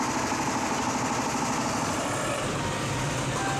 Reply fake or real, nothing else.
real